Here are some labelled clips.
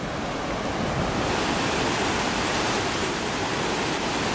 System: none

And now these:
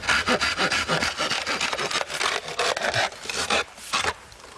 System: none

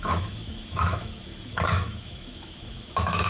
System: autoencoder, DAC-VAE